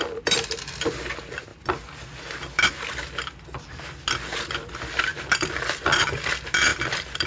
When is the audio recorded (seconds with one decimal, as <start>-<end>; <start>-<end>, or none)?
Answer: 0.0-5.1; 6.0-6.7